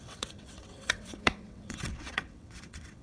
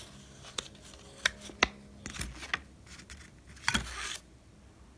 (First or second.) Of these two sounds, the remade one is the first